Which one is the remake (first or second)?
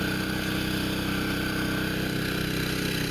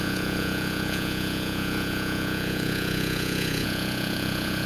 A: second